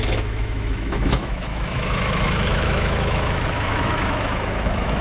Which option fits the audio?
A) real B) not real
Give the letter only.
B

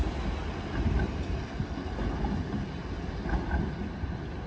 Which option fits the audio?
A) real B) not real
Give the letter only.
A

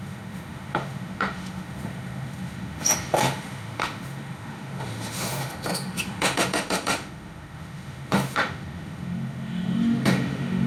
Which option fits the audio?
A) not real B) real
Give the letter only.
A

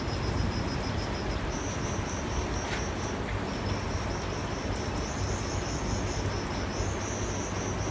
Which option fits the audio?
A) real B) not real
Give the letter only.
A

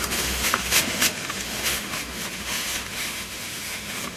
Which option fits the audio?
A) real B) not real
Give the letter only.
B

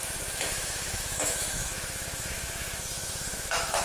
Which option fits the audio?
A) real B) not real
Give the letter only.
B